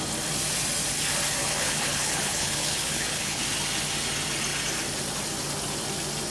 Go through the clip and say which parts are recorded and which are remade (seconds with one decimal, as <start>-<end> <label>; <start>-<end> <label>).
0.0-1.4 recorded; 1.4-3.4 remade; 3.4-6.3 recorded